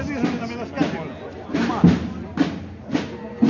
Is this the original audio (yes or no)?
yes